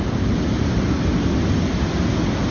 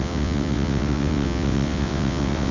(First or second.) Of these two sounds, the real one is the first